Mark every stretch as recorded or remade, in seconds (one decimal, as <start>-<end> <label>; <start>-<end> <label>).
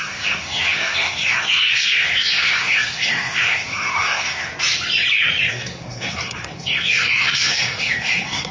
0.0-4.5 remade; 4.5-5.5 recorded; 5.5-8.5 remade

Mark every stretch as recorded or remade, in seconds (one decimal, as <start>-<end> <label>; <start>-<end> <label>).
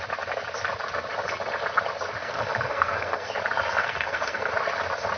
0.0-2.2 recorded; 2.2-3.3 remade; 3.3-3.8 recorded; 3.8-4.5 remade; 4.5-5.2 recorded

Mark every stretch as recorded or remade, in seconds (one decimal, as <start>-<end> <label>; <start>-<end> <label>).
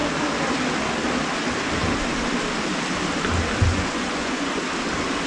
0.0-3.7 recorded; 3.7-4.5 remade; 4.5-5.3 recorded